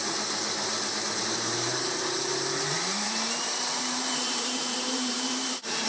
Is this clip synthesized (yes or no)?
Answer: yes